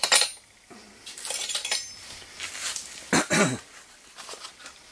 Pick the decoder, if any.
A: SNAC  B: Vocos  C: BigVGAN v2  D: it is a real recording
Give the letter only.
D